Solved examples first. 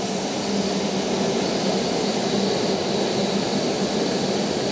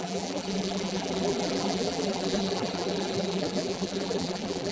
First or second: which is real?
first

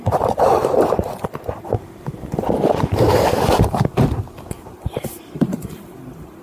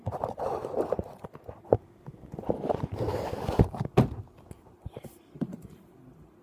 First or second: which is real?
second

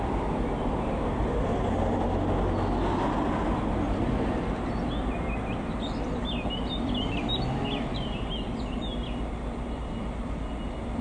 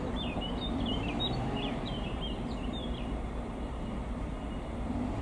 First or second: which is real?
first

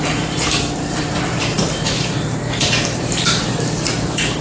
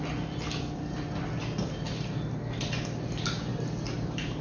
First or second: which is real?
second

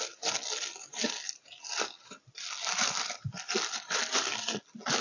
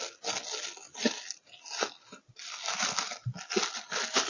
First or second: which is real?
second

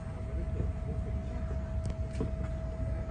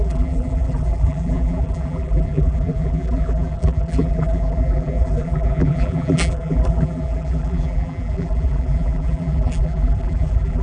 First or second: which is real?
first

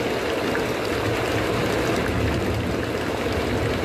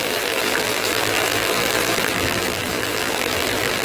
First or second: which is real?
first